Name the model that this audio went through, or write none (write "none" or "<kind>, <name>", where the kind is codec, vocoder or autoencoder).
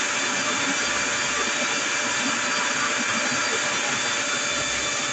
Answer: none